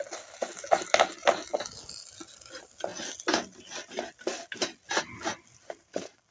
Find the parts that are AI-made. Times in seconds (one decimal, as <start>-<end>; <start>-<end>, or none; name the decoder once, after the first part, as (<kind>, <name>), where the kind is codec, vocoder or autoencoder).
none